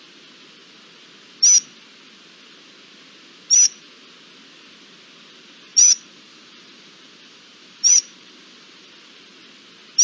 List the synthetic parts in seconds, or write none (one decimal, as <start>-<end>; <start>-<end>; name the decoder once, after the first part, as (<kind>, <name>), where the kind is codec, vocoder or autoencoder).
5.7-8.9 (vocoder, BigVGAN v2)